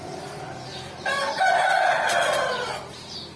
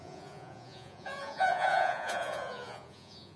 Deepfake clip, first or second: second